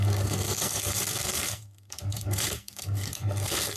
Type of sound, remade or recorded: remade